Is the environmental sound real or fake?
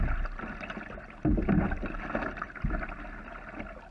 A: real